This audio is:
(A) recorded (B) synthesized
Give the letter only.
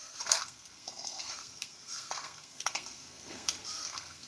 B